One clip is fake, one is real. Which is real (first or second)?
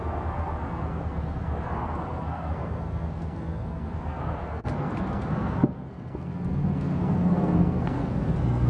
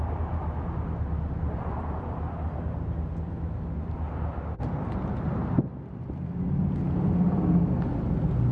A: second